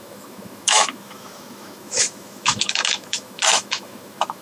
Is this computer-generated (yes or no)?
yes